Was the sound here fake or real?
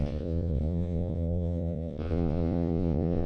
fake